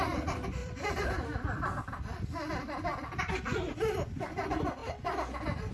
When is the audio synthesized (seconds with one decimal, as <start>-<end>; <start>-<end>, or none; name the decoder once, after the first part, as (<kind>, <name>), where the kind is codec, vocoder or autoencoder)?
0.0-2.9 (vocoder, BigVGAN v2); 3.8-4.8